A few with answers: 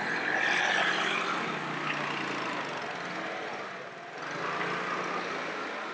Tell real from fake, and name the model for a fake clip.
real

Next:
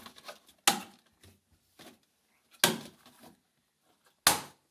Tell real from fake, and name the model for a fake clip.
real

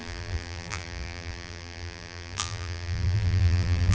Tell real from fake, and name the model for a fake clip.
fake, vocoder, BigVGAN v2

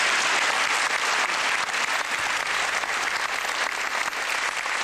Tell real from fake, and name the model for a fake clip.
real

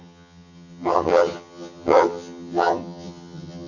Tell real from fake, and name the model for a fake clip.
fake, vocoder, HiFi-GAN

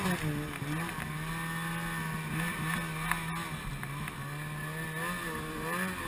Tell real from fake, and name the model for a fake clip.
real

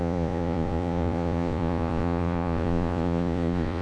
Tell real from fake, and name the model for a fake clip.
fake, vocoder, Vocos